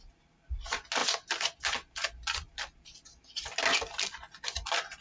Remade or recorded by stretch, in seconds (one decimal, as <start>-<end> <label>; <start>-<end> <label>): 0.0-5.0 recorded